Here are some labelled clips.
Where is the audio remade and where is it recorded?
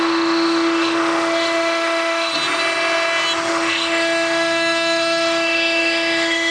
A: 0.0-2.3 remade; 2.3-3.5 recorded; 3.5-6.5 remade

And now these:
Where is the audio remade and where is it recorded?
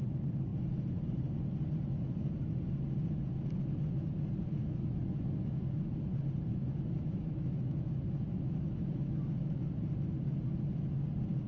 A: 0.0-4.6 recorded; 4.6-5.9 remade; 5.9-6.5 recorded; 6.5-9.6 remade; 9.6-11.5 recorded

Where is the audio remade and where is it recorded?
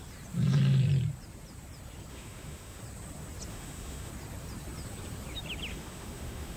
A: 0.0-2.1 recorded; 2.1-2.8 remade; 2.8-3.5 recorded; 3.5-4.1 remade; 4.1-5.7 recorded; 5.7-6.6 remade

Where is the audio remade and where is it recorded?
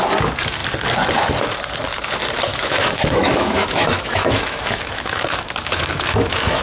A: 0.0-2.5 recorded; 2.5-6.6 remade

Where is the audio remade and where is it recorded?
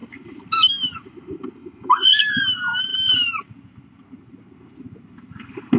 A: 0.0-1.6 recorded; 1.6-2.3 remade; 2.3-5.8 recorded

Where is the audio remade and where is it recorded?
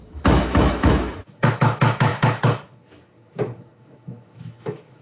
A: 0.0-5.0 remade